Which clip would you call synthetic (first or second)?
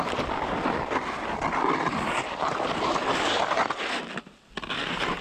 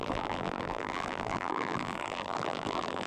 second